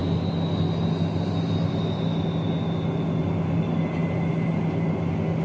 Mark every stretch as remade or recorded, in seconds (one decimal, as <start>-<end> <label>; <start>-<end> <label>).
0.0-5.4 recorded

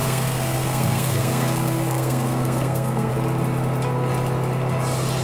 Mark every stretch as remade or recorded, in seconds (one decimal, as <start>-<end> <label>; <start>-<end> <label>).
0.0-3.1 remade; 3.1-5.2 recorded

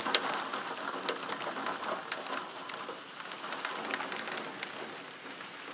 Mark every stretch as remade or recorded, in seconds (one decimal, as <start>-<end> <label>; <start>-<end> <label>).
0.0-5.7 recorded

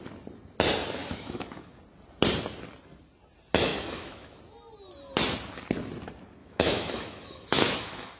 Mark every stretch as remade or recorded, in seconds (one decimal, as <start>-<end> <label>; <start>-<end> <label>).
0.0-1.0 recorded; 1.0-1.8 remade; 1.8-3.7 recorded; 3.7-4.4 remade; 4.4-6.4 recorded; 6.4-8.2 remade

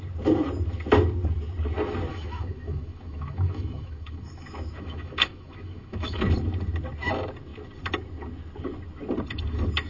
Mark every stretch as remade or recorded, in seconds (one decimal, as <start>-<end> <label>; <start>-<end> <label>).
0.0-2.1 recorded; 2.1-6.2 remade; 6.2-9.9 recorded